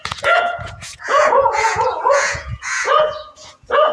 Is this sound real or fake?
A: fake